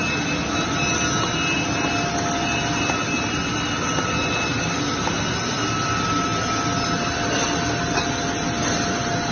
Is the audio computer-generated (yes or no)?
no